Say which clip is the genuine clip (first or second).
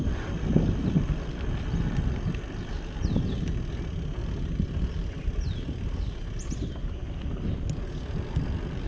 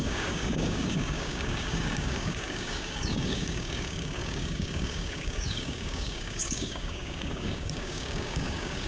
first